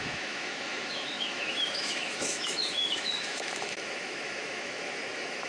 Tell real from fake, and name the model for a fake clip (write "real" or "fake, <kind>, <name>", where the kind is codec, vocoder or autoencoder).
fake, autoencoder, DAC-VAE